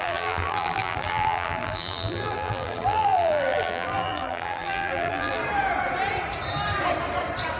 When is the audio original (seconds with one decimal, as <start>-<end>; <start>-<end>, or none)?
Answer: 5.4-7.6